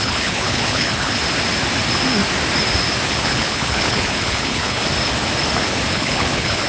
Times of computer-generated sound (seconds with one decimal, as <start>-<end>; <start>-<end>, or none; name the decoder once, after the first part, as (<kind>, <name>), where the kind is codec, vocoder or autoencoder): 0.0-1.2 (codec, HILCodec); 3.1-4.8; 5.9-6.7